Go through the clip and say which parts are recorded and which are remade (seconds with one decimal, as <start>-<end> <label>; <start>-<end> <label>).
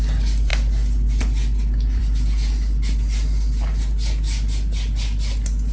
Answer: 0.0-5.7 recorded